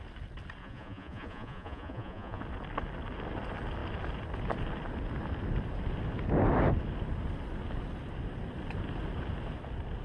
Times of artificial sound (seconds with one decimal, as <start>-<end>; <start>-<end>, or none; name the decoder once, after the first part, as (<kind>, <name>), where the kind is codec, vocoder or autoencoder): 0.6-2.4 (vocoder, Vocos)